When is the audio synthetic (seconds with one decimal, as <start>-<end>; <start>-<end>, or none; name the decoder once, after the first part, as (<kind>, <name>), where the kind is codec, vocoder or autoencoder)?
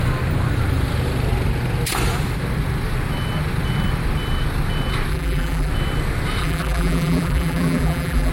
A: 5.1-5.7 (vocoder, BigVGAN v2); 6.4-8.3